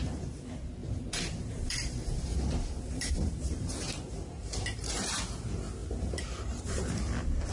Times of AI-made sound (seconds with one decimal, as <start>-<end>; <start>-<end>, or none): 0.8-5.3; 5.8-6.8